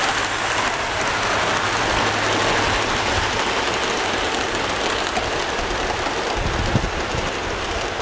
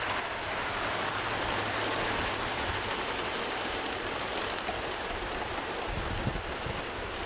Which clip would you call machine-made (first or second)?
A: second